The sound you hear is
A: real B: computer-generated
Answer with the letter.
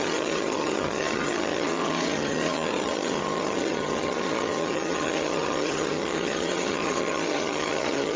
B